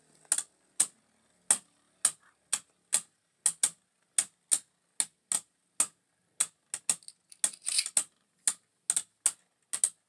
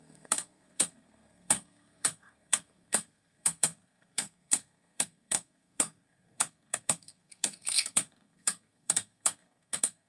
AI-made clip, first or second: second